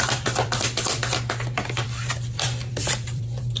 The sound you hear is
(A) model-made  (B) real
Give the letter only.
A